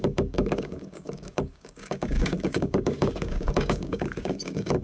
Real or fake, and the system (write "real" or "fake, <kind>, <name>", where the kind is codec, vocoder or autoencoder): fake, codec, DAC